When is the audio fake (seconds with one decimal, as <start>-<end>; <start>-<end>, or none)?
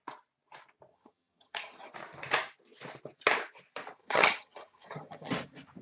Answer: 0.9-1.9; 4.0-5.3